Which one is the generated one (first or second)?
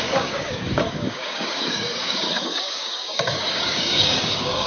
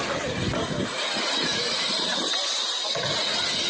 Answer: first